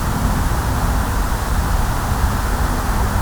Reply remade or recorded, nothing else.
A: recorded